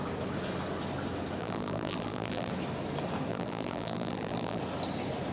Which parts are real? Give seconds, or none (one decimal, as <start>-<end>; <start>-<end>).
0.0-1.4; 2.5-3.3; 4.6-5.3